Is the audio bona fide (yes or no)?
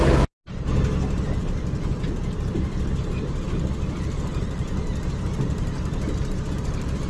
yes